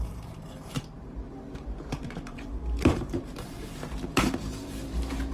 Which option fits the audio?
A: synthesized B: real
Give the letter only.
A